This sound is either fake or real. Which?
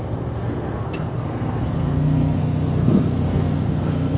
fake